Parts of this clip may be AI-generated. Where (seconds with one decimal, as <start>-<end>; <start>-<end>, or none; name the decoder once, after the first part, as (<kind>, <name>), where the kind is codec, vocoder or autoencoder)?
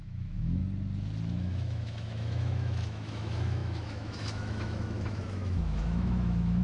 0.0-0.6 (autoencoder, DAC-VAE); 1.3-6.6